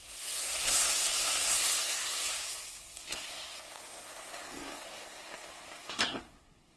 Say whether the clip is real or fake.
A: fake